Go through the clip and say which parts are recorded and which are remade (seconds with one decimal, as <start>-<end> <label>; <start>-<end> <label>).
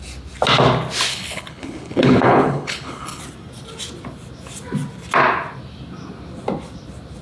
0.0-1.1 recorded; 1.1-3.2 remade; 3.2-7.2 recorded